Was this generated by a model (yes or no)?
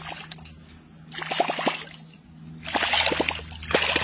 no